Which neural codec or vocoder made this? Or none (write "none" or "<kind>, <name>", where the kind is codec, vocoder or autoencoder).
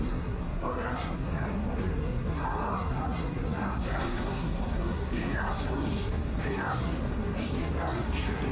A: codec, SNAC